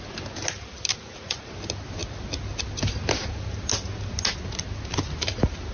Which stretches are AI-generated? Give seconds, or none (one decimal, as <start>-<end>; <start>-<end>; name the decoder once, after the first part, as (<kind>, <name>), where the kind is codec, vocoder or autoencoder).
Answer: 0.9-1.5 (vocoder, Vocos)